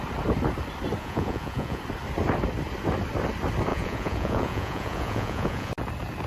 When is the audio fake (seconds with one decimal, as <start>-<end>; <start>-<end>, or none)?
1.0-1.8; 3.7-5.7